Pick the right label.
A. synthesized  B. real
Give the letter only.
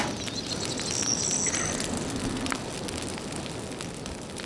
B